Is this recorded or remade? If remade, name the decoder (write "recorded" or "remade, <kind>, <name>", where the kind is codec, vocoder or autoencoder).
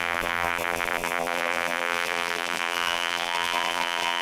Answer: remade, vocoder, BigVGAN v2